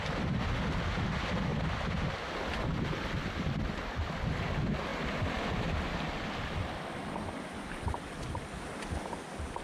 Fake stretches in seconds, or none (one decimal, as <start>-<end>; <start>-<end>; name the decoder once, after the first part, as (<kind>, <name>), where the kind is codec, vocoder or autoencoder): none